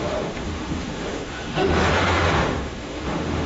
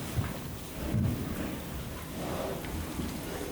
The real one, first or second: second